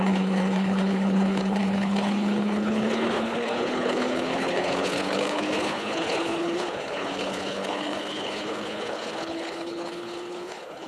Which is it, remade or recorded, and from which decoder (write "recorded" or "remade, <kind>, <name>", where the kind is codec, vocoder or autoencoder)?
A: remade, codec, HILCodec